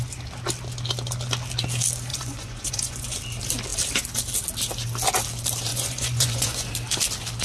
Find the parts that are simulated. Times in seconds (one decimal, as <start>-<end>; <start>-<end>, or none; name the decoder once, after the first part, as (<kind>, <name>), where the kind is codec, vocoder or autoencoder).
2.1-3.2 (vocoder, Vocos); 5.7-6.7